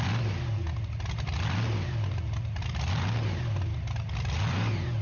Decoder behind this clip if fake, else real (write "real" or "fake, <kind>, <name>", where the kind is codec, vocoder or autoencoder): real